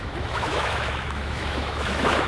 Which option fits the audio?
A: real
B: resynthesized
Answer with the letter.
B